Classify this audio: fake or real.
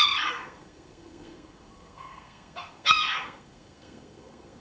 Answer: fake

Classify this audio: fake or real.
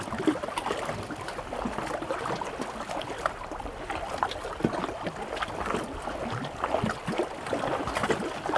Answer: real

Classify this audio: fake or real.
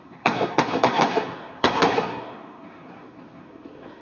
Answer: fake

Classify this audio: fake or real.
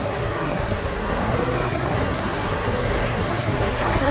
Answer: fake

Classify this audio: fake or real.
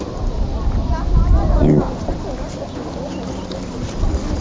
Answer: real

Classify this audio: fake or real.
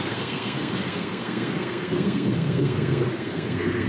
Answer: fake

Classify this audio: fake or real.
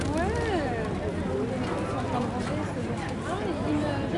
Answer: real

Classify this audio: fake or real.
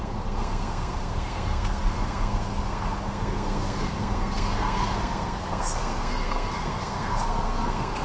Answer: fake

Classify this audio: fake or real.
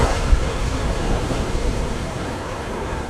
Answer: fake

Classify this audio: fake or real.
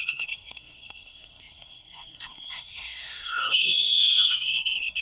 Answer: fake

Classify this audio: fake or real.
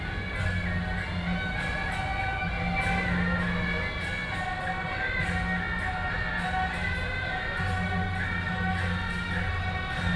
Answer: real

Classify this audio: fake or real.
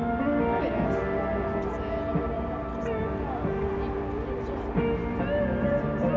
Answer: real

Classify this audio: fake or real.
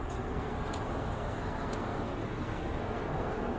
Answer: fake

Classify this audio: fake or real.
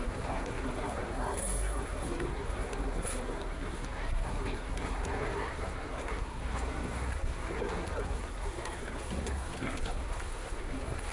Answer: fake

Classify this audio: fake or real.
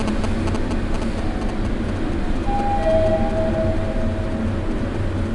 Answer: real